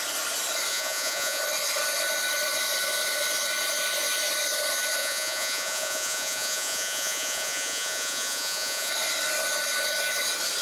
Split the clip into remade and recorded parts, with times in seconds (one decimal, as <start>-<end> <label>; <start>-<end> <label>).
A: 0.0-0.7 recorded; 0.7-1.4 remade; 1.4-5.0 recorded; 5.0-8.9 remade; 8.9-10.6 recorded